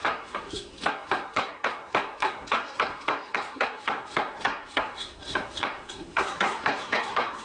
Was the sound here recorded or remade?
remade